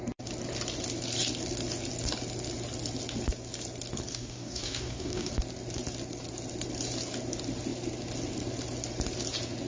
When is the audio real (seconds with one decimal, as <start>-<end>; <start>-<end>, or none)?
0.0-4.1; 5.3-9.7